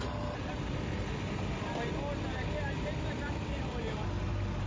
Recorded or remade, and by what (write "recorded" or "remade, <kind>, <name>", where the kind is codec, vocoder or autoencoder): recorded